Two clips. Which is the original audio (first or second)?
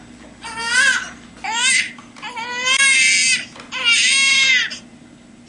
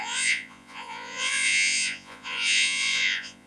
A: first